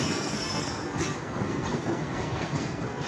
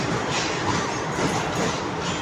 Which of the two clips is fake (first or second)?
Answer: first